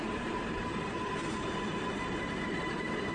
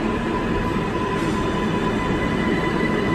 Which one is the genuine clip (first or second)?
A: second